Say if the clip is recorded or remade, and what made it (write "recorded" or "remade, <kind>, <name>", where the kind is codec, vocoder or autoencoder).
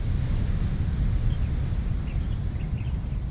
recorded